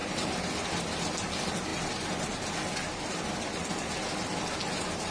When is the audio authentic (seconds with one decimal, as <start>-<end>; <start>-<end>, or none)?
0.0-5.1